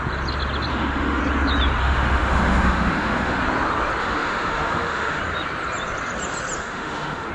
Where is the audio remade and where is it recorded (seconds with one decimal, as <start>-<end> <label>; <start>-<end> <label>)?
0.0-0.7 recorded; 0.7-1.2 remade; 1.2-1.8 recorded; 1.8-3.4 remade; 3.4-4.0 recorded; 4.0-5.2 remade; 5.2-6.6 recorded; 6.6-7.3 remade